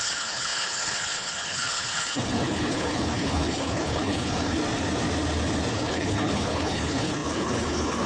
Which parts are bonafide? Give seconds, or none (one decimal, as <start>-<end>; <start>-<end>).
4.6-5.7